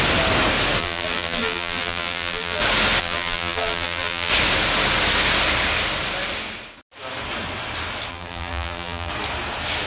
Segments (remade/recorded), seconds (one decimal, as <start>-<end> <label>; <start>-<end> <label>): 0.0-0.8 recorded; 0.8-2.6 remade; 2.6-3.0 recorded; 3.0-4.3 remade; 4.3-8.1 recorded; 8.1-9.1 remade; 9.1-9.9 recorded